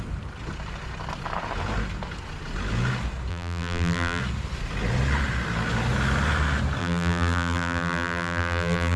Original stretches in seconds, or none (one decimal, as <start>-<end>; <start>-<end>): 0.0-3.3; 4.2-6.8